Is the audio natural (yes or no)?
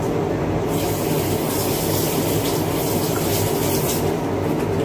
yes